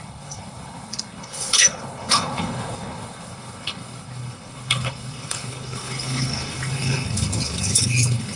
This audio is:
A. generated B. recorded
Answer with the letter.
A